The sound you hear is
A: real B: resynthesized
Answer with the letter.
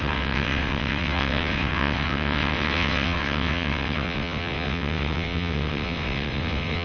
B